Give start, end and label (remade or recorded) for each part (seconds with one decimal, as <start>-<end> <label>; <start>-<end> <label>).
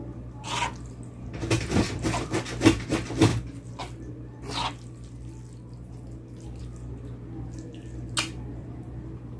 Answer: 0.0-8.6 recorded; 8.6-9.4 remade